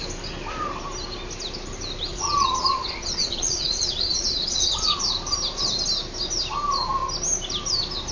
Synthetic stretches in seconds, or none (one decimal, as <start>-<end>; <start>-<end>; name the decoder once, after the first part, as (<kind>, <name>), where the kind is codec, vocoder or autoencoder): 2.1-5.0 (vocoder, Vocos)

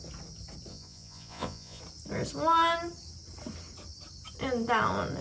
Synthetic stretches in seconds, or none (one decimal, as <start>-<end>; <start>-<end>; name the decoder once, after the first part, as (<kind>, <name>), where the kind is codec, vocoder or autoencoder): 0.7-1.8 (vocoder, Vocos)

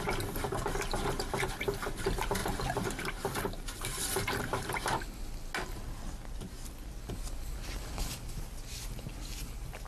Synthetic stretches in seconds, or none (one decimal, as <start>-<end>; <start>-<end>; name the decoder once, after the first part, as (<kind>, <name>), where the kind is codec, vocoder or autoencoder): 2.4-4.7 (vocoder, BigVGAN v2)

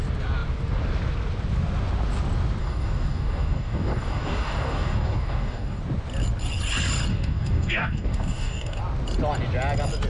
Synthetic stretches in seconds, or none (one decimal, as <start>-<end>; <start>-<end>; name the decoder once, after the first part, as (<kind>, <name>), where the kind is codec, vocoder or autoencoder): 2.6-5.8 (codec, DAC); 7.1-8.8

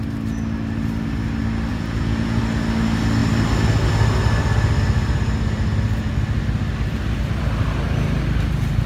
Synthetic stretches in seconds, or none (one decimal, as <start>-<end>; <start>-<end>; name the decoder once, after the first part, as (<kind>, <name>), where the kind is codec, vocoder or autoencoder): 1.7-2.4 (vocoder, Vocos)